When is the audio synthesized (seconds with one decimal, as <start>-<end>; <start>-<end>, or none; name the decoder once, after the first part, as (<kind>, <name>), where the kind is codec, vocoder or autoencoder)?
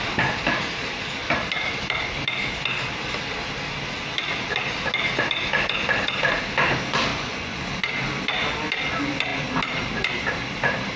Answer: 7.1-7.7 (vocoder, Vocos)